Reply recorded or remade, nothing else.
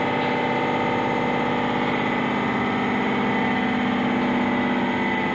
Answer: recorded